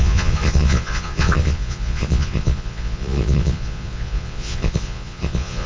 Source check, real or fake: fake